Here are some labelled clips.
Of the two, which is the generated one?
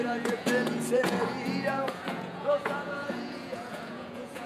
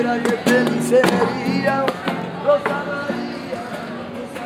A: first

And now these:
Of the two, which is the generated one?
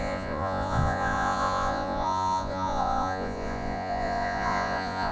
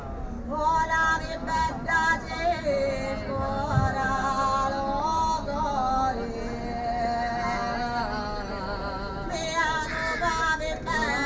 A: first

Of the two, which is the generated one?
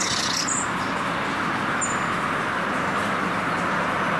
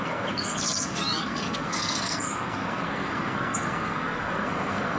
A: second